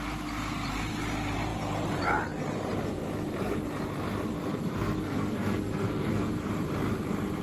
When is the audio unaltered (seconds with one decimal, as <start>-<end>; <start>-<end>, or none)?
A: 0.0-4.5; 6.5-7.4